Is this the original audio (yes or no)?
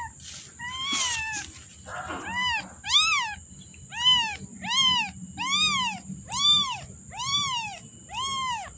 yes